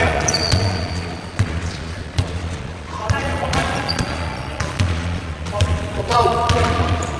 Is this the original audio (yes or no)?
no